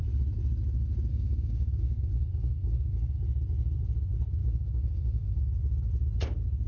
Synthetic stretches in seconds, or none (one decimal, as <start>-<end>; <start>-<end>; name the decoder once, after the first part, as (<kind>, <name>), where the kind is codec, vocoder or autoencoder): 1.1-3.2 (codec, DAC); 4.4-5.4